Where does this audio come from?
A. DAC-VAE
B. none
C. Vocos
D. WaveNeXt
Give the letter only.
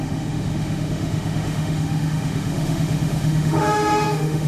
A